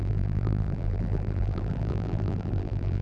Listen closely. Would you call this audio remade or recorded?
remade